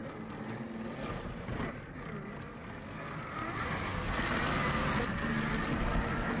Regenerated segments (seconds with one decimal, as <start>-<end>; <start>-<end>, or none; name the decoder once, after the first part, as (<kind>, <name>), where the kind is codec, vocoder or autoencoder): none